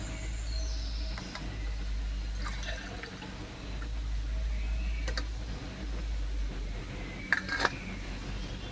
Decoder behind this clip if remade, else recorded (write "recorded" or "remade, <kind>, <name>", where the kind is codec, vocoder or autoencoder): recorded